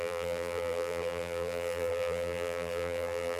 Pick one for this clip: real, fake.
fake